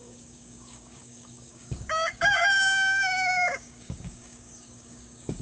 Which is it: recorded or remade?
remade